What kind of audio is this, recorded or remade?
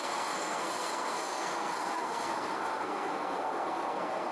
remade